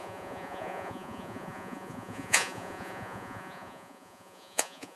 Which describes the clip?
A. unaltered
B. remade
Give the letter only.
B